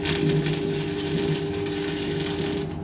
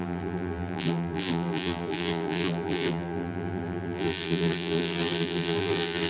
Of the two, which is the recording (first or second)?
first